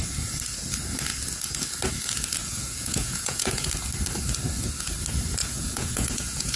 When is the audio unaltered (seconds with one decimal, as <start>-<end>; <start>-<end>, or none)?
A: 0.0-2.4; 3.7-5.4